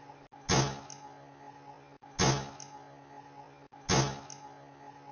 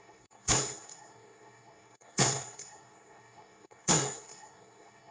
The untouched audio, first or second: first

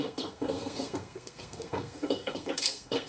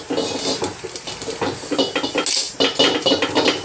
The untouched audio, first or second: second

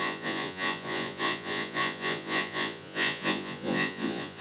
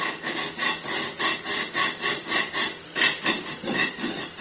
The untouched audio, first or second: second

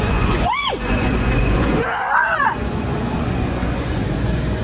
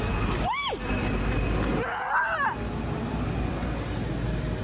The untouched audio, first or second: second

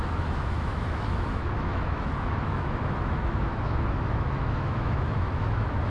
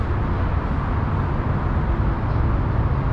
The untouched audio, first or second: second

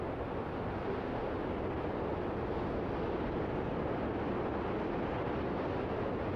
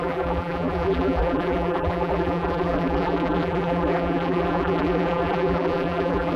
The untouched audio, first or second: first